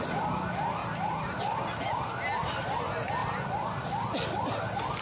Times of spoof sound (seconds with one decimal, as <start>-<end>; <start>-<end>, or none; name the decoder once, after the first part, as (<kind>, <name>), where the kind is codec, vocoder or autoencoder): none